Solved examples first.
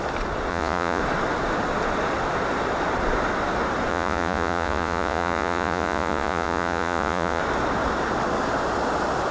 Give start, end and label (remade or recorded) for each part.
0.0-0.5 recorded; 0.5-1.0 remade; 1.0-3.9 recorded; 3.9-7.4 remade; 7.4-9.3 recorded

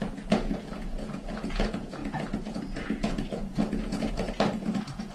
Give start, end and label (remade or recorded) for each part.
0.0-5.1 remade

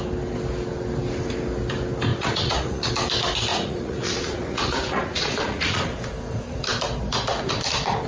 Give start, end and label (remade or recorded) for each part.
0.0-2.1 recorded; 2.1-2.9 remade; 2.9-3.5 recorded; 3.5-5.8 remade; 5.8-8.1 recorded

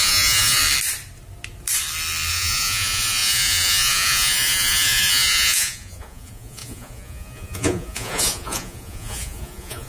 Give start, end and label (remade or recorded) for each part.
0.0-0.6 remade; 0.6-2.3 recorded; 2.3-9.9 remade

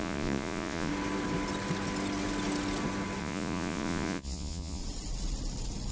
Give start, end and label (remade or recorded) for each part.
0.0-0.9 remade; 0.9-3.2 recorded; 3.2-4.8 remade; 4.8-5.9 recorded

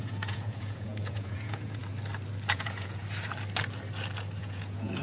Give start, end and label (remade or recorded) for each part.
0.0-1.8 remade; 1.8-2.5 recorded; 2.5-3.0 remade; 3.0-4.4 recorded; 4.4-5.0 remade

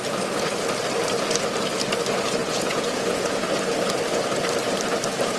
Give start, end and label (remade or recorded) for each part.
0.0-2.4 recorded; 2.4-3.5 remade; 3.5-5.4 recorded

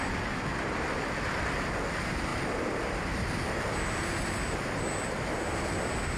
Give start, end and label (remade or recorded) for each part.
0.0-6.2 recorded